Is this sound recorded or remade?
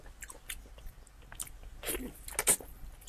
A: recorded